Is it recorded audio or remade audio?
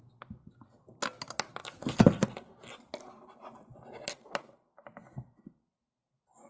recorded